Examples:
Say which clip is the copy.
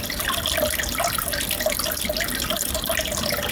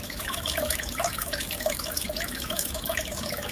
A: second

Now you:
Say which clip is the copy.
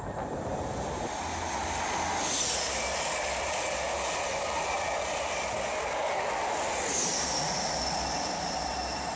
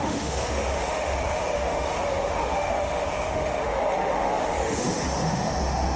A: second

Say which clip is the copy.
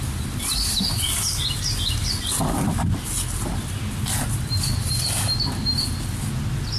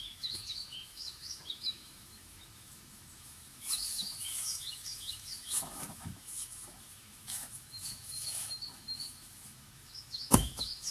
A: second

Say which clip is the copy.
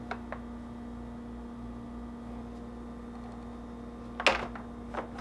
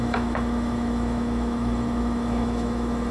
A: second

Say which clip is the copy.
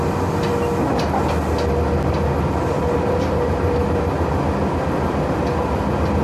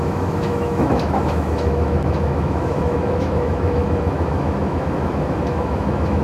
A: second